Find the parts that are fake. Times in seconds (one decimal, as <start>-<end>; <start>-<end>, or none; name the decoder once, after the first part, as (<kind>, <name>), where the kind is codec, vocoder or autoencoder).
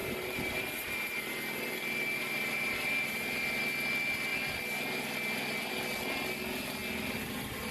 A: 0.0-1.3 (vocoder, BigVGAN v2); 2.2-3.6